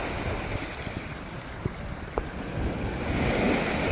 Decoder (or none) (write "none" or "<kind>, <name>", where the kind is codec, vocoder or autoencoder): none